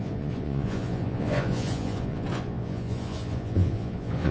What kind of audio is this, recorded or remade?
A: remade